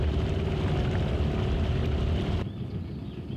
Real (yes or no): yes